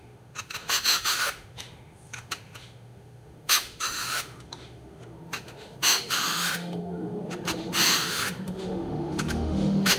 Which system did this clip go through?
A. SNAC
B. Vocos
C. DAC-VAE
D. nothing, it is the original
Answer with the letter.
C